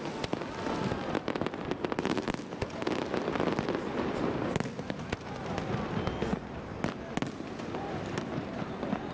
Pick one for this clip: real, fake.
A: real